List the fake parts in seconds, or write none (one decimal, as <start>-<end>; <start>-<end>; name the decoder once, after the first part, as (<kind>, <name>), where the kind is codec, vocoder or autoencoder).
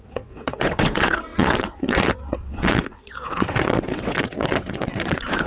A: 0.0-5.5 (vocoder, WaveNeXt)